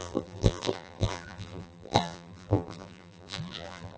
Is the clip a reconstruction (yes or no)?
yes